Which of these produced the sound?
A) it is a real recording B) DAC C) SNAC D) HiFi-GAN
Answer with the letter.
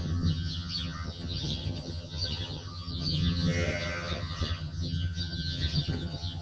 D